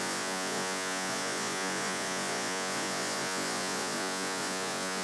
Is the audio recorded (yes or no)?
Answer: no